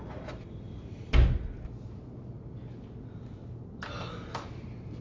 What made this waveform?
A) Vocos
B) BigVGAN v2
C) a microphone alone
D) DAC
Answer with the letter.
C